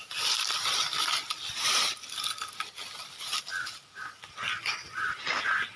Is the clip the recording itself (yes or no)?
yes